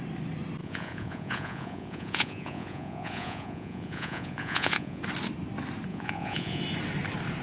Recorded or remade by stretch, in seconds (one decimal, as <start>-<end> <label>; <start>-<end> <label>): 0.0-0.6 recorded; 0.6-5.0 remade; 5.0-5.9 recorded; 5.9-6.6 remade; 6.6-7.4 recorded